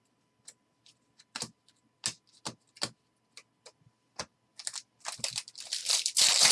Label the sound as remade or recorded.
recorded